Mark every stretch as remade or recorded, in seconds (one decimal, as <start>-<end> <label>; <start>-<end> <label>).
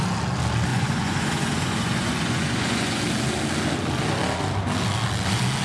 0.0-0.7 recorded; 0.7-3.0 remade; 3.0-5.6 recorded